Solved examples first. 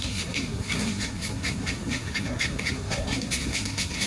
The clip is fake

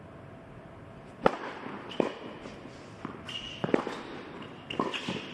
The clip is real